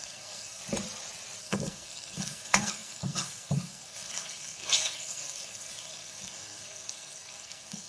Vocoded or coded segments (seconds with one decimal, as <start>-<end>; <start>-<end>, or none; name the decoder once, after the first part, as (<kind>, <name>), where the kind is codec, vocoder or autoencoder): 0.0-0.6 (codec, SNAC); 1.4-7.9